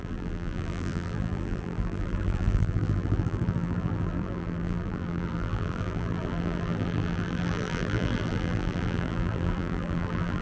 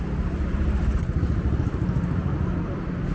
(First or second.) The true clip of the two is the second